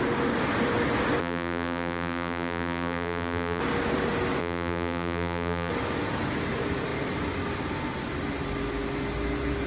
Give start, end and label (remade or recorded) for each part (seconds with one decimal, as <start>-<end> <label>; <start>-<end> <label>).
0.0-1.2 recorded; 1.2-3.6 remade; 3.6-4.4 recorded; 4.4-5.7 remade; 5.7-9.7 recorded